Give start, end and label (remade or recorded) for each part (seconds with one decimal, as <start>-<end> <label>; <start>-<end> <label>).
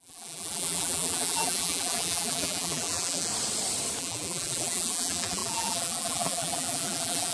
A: 0.0-3.3 remade; 3.3-4.0 recorded; 4.0-7.3 remade